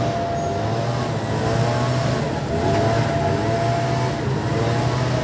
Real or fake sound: real